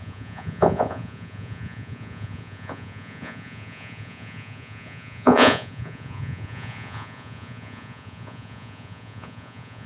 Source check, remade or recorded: remade